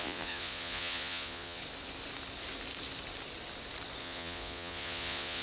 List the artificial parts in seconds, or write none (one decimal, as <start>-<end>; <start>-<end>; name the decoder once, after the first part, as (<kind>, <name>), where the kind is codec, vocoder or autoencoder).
0.0-1.6 (vocoder, Vocos); 4.0-5.4